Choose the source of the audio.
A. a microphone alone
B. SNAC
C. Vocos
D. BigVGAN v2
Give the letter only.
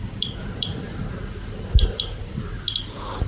A